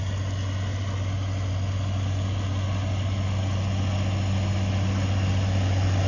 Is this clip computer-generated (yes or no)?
no